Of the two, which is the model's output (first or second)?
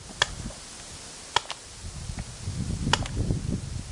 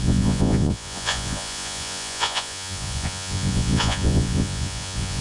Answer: second